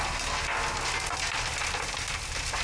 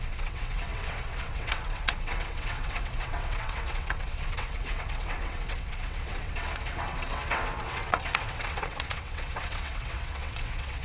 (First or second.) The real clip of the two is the first